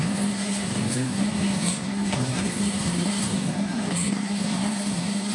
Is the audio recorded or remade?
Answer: remade